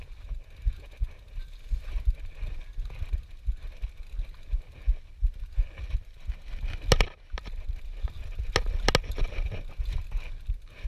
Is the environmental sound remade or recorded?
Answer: recorded